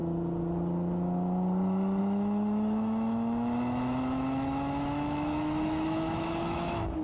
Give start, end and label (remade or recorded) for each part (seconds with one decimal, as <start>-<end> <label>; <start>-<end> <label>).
0.0-2.0 recorded; 2.0-7.0 remade